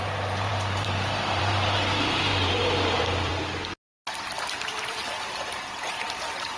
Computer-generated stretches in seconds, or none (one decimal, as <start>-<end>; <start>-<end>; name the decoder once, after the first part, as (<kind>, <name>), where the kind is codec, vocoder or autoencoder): 0.0-3.3 (vocoder, BigVGAN v2); 4.1-4.7; 5.3-6.6